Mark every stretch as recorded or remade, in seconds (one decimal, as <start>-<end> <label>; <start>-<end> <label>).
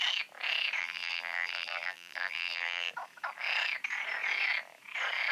0.0-0.8 recorded; 0.8-2.9 remade; 2.9-5.3 recorded